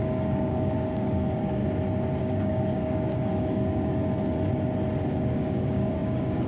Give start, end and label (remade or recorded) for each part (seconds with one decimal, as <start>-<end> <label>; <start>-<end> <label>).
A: 0.0-1.6 remade; 1.6-2.2 recorded; 2.2-4.0 remade; 4.0-5.1 recorded; 5.1-6.5 remade